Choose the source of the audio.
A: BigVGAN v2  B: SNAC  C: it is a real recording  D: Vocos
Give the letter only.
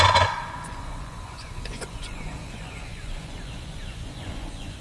D